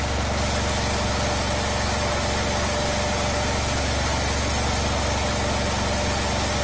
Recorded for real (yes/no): yes